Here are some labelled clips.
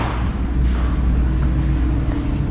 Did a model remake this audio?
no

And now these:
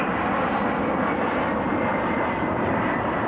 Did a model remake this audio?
no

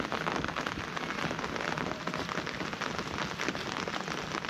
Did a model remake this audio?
no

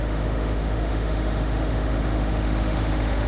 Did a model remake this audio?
yes